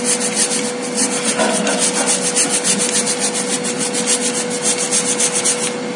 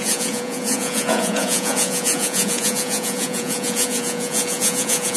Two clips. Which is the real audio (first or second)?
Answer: first